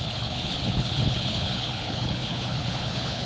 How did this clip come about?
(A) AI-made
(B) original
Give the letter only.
A